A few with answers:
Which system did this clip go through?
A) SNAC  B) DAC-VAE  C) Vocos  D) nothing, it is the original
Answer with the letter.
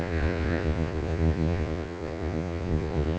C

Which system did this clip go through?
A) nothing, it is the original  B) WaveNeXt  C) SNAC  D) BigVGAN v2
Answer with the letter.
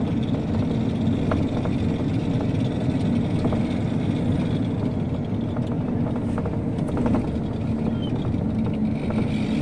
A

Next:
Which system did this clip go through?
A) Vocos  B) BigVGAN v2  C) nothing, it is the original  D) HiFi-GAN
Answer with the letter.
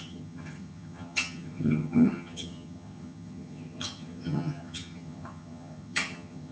D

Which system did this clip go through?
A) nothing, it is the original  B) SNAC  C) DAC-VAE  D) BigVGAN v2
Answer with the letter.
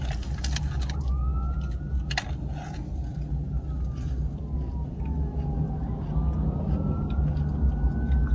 A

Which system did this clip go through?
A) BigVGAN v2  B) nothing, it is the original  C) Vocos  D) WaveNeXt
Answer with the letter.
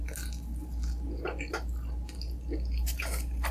B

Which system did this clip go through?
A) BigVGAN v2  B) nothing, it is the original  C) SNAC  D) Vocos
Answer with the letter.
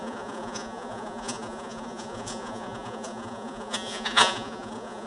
D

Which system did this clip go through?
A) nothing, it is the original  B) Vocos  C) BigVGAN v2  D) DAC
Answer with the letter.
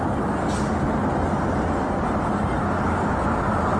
A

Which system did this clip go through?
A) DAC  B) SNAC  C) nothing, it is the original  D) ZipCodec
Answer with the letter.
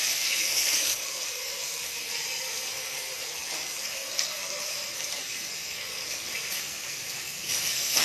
B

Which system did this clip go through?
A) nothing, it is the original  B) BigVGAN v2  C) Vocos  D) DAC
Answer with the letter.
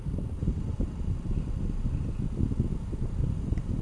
A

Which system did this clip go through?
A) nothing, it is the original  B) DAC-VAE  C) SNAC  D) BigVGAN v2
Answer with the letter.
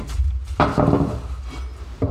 A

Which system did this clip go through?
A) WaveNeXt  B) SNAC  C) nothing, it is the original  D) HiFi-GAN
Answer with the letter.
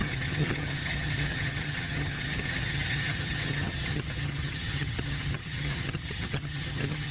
D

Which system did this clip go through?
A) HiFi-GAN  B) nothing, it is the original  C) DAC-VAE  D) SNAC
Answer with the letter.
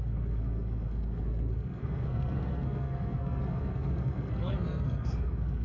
D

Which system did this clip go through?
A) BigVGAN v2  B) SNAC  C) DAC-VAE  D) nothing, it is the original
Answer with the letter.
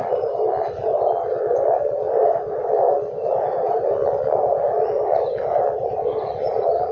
D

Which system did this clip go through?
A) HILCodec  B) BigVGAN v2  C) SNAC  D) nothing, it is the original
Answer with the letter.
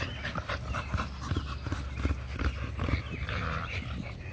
D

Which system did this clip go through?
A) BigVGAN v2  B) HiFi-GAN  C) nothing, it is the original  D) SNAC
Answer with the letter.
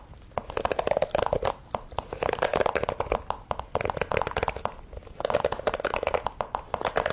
C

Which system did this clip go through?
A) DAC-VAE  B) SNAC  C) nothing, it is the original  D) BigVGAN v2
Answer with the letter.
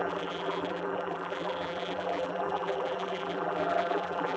D